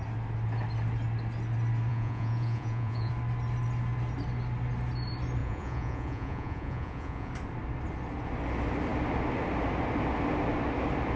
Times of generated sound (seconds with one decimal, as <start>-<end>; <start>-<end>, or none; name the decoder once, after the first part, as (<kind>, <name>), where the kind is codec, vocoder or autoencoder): 1.9-3.1 (vocoder, Vocos); 5.4-7.3